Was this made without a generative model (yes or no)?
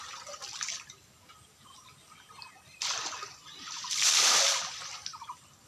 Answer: yes